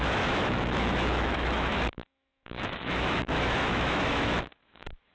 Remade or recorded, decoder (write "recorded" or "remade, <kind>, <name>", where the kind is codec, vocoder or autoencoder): remade, autoencoder, DAC-VAE